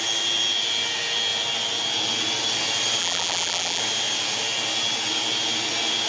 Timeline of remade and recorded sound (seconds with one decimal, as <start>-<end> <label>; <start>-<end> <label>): 0.0-3.0 recorded; 3.0-3.8 remade; 3.8-6.1 recorded